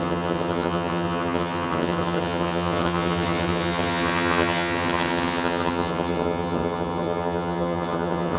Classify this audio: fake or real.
fake